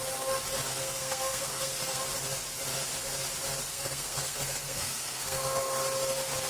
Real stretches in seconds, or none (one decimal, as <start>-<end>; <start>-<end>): 0.0-0.7; 2.0-3.7; 5.6-6.5